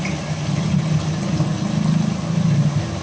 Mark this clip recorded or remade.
recorded